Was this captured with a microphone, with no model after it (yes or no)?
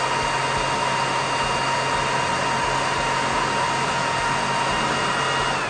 yes